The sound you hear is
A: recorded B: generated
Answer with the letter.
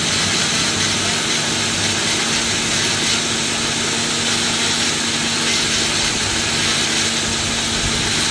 A